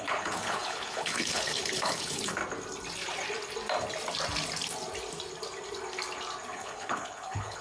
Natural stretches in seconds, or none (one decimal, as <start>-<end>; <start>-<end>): 2.4-6.5